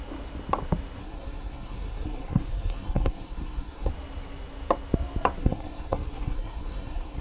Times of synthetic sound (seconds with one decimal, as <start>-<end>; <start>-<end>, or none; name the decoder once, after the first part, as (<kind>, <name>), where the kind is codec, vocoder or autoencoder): 1.0-3.9 (codec, SNAC); 5.4-7.2